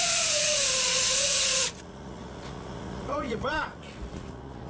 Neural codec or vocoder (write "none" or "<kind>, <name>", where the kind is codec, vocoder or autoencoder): vocoder, Vocos